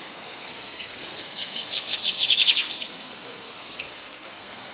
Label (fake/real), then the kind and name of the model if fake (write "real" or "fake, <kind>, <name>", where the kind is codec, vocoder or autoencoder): fake, codec, SNAC